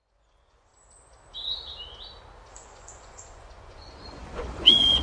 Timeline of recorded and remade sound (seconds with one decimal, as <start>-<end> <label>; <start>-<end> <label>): 0.0-0.7 remade; 0.7-2.5 recorded; 2.5-5.0 remade